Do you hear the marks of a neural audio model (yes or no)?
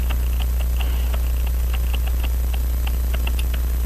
no